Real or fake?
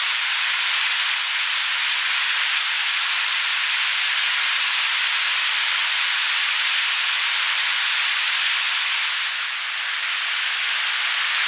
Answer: real